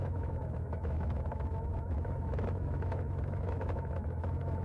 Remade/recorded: remade